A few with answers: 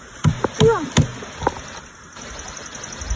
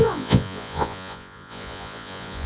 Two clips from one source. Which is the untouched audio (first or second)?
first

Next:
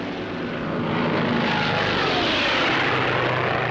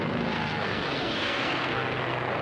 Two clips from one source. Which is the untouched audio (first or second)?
first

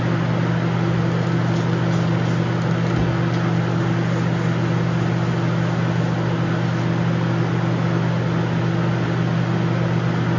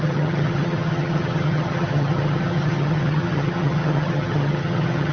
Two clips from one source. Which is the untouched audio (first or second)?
first